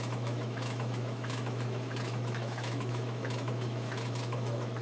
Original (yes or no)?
no